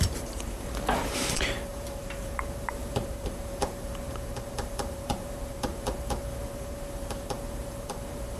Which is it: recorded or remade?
remade